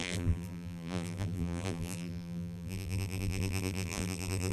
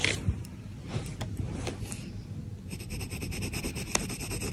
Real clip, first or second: second